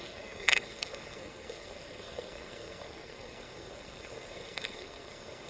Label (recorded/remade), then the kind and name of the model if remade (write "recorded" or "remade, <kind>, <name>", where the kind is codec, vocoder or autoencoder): remade, codec, SNAC